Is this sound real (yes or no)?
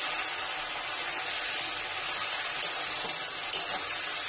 yes